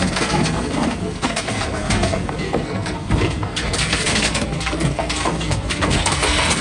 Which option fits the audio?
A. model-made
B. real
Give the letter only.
A